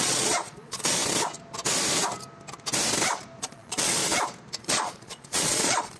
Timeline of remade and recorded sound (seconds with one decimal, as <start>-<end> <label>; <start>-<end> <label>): 0.0-1.0 remade; 1.0-3.4 recorded; 3.4-4.0 remade; 4.0-4.6 recorded; 4.6-6.0 remade